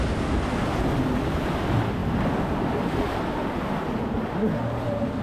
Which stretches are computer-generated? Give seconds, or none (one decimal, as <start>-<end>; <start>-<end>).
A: none